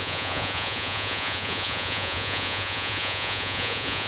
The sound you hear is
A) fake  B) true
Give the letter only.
A